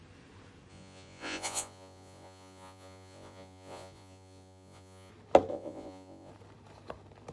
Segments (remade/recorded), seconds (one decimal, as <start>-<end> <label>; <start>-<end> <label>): 0.0-0.7 recorded; 0.7-5.1 remade; 5.1-5.5 recorded; 5.5-6.3 remade; 6.3-7.3 recorded

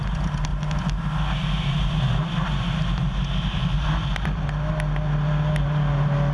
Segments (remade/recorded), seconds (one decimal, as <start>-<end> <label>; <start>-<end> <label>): 0.0-6.3 recorded

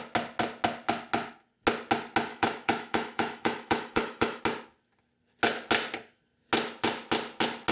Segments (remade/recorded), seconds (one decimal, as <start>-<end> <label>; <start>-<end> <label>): 0.0-2.3 recorded; 2.3-4.4 remade; 4.4-7.7 recorded

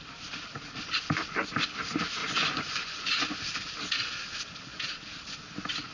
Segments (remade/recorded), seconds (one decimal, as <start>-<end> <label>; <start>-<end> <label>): 0.0-2.2 recorded; 2.2-3.4 remade; 3.4-5.9 recorded

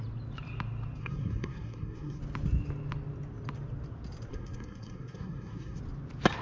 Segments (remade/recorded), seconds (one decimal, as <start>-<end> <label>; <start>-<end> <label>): 0.0-1.0 recorded; 1.0-2.2 remade; 2.2-4.3 recorded; 4.3-5.8 remade; 5.8-6.4 recorded

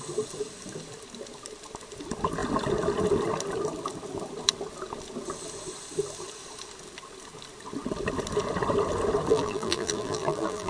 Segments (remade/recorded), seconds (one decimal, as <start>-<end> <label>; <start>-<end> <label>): 0.0-9.3 recorded; 9.3-10.7 remade